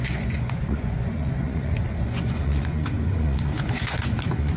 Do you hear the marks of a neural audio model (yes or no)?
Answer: yes